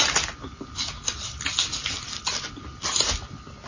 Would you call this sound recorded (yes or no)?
yes